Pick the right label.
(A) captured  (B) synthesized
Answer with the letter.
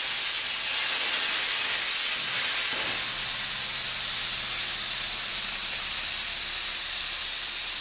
A